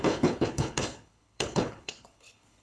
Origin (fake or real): fake